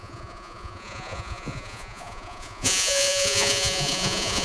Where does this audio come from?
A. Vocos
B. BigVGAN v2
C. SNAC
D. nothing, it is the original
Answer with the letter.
A